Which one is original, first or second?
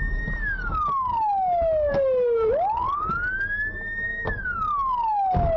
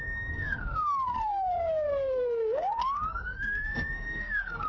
first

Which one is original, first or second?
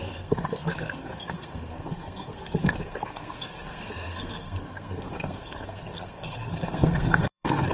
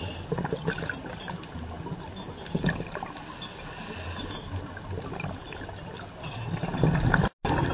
second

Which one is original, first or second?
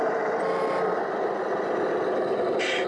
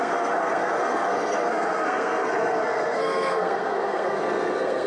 first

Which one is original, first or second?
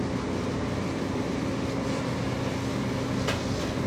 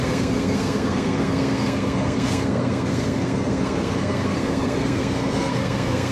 first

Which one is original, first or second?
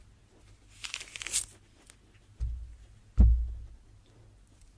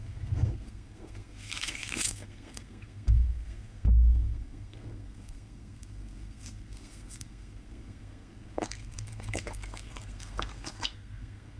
first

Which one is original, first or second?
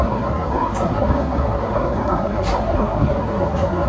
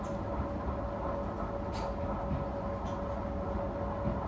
second